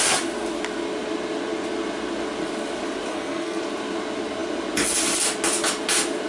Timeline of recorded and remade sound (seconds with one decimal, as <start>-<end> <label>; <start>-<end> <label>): 0.0-3.1 recorded; 3.1-3.6 remade; 3.6-6.3 recorded